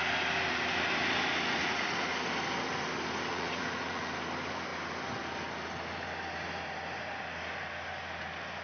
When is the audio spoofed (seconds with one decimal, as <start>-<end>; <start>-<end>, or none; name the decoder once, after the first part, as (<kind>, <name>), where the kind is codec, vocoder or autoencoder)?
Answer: 1.6-2.3 (vocoder, Vocos); 3.3-4.1